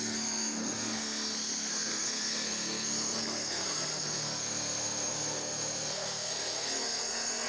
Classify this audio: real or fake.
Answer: fake